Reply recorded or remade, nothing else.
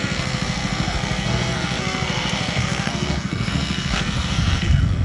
remade